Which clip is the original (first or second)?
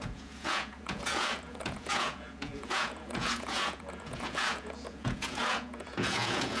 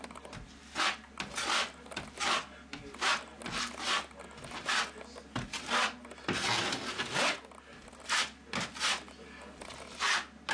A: second